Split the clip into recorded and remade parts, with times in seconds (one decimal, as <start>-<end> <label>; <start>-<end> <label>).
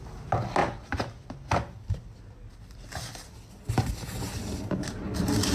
0.0-5.5 recorded